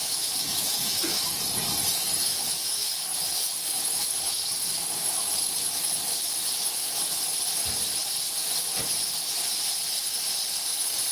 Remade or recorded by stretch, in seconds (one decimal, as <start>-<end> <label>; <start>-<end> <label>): 0.0-1.4 remade; 1.4-1.9 recorded; 1.9-7.0 remade; 7.0-11.1 recorded